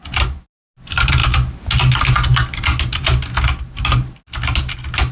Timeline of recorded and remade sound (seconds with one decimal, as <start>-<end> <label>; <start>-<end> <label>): 0.0-5.1 recorded